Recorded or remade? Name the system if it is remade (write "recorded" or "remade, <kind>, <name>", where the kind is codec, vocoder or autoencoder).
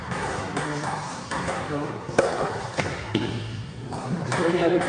remade, codec, SNAC